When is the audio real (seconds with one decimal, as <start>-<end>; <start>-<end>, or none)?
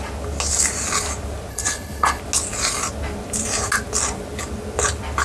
0.0-1.5; 2.2-5.2